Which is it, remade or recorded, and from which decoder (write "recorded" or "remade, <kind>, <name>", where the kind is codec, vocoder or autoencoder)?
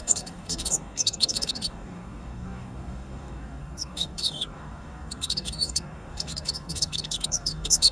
remade, codec, DAC